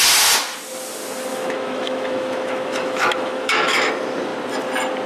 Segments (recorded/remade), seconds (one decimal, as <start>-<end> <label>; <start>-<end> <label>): 0.0-1.3 recorded; 1.3-3.9 remade; 3.9-5.1 recorded